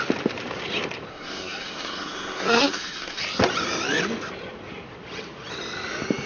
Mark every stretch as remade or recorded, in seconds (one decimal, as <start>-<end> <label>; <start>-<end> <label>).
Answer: 0.0-1.1 recorded; 1.1-3.2 remade; 3.2-6.3 recorded